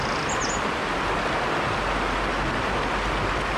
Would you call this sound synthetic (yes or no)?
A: no